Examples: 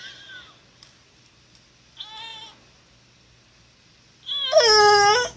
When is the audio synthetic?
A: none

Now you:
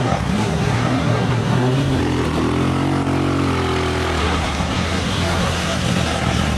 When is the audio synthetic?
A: 0.0-2.0 (codec, SNAC); 4.2-6.6

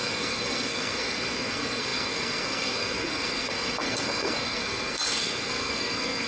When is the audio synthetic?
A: 0.0-6.3 (codec, SNAC)

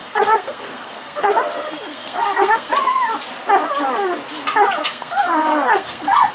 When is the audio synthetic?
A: 0.0-1.3 (codec, SNAC); 1.9-2.7; 4.8-6.3

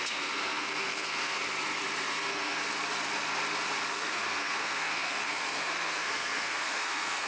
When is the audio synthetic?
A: 0.0-1.4 (codec, SNAC); 2.1-2.6; 3.9-7.3

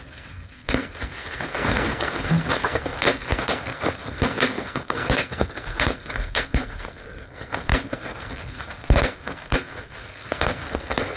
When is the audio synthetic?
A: 0.0-11.2 (codec, SNAC)